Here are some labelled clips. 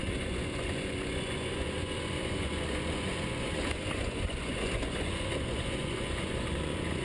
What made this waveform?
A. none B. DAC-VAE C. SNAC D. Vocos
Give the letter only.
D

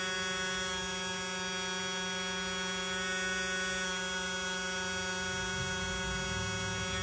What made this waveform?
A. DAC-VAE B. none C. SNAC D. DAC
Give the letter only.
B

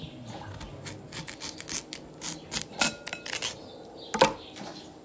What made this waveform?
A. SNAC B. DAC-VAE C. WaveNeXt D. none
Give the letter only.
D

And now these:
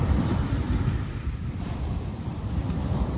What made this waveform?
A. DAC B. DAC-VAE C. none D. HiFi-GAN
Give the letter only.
C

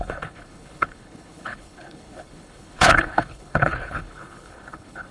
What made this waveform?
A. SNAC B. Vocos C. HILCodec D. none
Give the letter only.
C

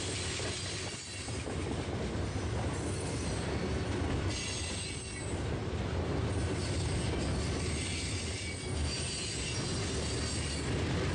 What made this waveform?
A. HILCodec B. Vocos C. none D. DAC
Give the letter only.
C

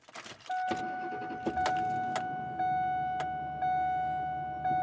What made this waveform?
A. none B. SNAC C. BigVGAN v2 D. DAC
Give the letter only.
A